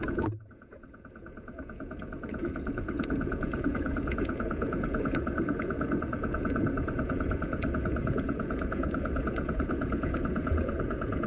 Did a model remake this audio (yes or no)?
yes